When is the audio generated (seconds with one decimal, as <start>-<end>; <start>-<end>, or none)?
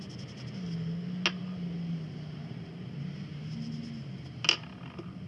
none